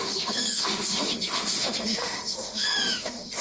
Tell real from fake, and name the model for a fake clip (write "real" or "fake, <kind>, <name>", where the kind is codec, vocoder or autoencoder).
fake, autoencoder, DAC-VAE